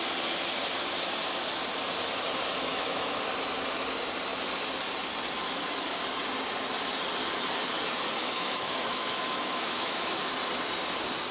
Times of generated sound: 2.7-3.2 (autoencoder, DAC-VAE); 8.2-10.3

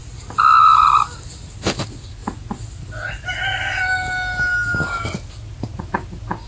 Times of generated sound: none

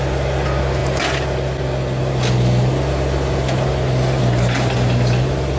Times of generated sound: none